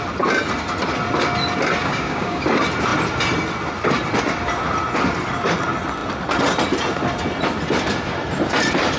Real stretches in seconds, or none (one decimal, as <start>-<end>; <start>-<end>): 0.0-1.8; 2.5-9.0